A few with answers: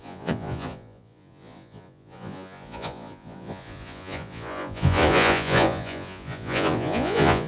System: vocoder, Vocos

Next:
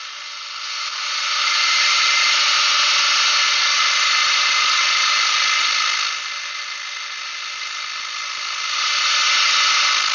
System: none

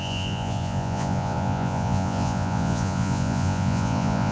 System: vocoder, Vocos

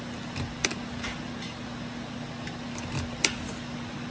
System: none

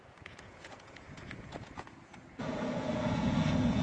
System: vocoder, Vocos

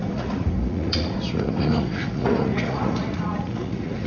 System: vocoder, Vocos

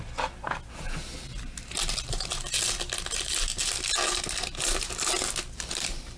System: none